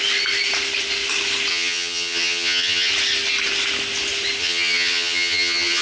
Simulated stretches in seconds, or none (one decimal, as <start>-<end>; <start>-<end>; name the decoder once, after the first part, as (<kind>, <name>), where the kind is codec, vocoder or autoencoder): 1.5-2.9 (vocoder, HiFi-GAN); 4.4-5.8